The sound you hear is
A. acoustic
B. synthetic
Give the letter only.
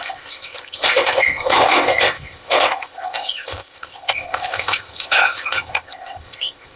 B